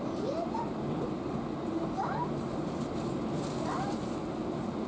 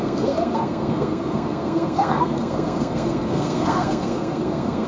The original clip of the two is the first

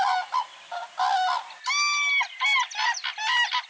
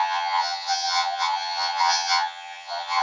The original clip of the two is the first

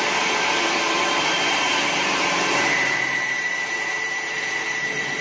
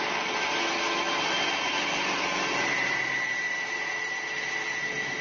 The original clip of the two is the second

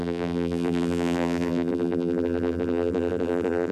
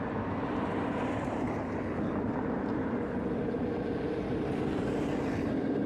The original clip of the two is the second